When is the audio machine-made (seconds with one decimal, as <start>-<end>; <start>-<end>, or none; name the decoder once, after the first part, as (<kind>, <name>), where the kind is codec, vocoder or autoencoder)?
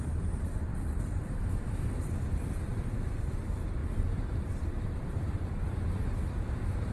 0.0-0.7 (vocoder, BigVGAN v2); 1.2-6.9